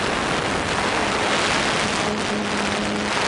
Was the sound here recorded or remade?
recorded